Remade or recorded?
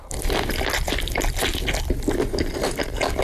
recorded